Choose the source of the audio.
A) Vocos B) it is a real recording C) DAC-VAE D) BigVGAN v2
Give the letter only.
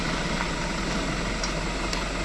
B